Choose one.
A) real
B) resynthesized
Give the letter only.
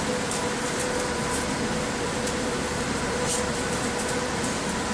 A